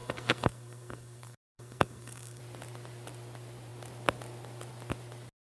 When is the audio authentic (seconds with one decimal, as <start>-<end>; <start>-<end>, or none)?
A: 2.4-5.5